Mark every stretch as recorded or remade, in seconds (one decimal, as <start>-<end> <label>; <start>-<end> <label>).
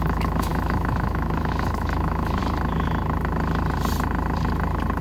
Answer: 0.0-2.4 remade; 2.4-5.0 recorded